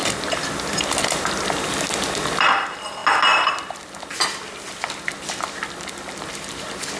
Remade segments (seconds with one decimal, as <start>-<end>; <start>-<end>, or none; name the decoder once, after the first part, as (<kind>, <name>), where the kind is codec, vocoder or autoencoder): none